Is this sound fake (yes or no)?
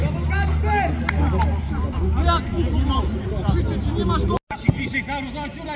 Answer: no